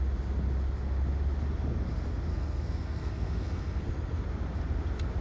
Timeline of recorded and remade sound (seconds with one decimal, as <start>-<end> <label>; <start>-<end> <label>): 0.0-2.3 recorded; 2.3-4.2 remade; 4.2-5.2 recorded